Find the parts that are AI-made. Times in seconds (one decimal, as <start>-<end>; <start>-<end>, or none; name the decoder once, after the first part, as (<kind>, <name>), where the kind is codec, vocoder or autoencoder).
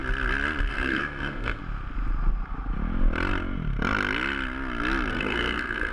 0.7-1.6 (codec, SNAC); 5.1-5.9